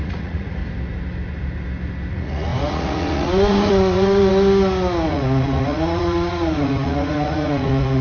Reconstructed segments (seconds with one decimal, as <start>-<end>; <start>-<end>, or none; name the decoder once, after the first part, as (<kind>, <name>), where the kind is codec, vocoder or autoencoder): 0.0-0.6 (vocoder, Vocos); 2.1-4.3; 5.1-8.0